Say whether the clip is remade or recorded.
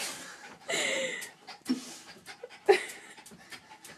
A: remade